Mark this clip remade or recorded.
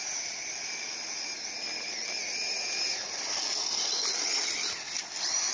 recorded